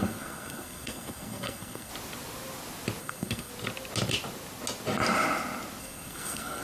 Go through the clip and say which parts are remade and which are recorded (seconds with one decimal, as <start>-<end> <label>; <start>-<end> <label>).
0.0-1.9 remade; 1.9-3.0 recorded; 3.0-3.5 remade; 3.5-5.8 recorded; 5.8-6.6 remade